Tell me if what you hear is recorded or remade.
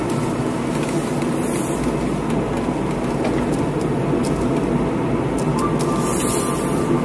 recorded